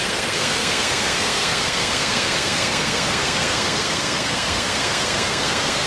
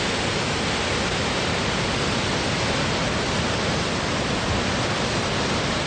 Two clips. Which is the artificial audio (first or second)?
first